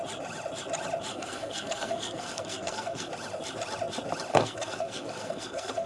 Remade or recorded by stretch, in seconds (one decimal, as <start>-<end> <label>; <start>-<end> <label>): 0.0-1.1 recorded; 1.1-3.1 remade; 3.1-4.3 recorded; 4.3-5.9 remade